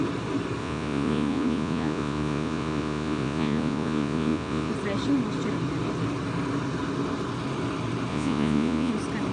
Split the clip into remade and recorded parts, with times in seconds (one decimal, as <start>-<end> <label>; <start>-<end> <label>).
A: 0.0-0.6 recorded; 0.6-4.7 remade; 4.7-8.1 recorded; 8.1-8.9 remade; 8.9-9.3 recorded